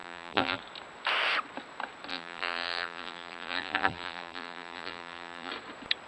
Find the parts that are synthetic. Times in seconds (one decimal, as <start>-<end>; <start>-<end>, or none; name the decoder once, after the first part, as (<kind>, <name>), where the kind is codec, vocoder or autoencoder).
0.0-0.6 (vocoder, BigVGAN v2); 2.1-5.5